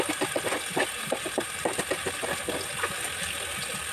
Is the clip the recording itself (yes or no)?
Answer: yes